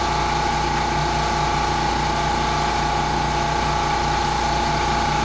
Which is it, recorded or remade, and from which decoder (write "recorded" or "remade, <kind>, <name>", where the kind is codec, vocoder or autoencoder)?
recorded